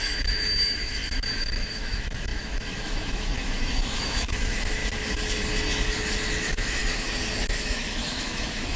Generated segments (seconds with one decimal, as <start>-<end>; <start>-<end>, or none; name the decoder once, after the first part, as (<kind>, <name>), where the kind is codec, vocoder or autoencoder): 0.0-4.8 (autoencoder, DAC-VAE); 6.3-6.8; 7.6-8.8